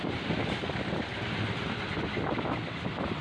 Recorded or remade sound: recorded